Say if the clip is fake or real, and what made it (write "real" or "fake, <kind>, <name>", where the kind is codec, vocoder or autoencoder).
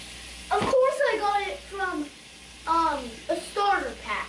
real